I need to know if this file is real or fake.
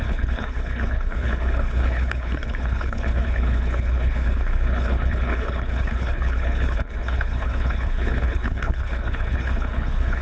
fake